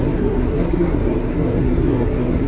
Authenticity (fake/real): fake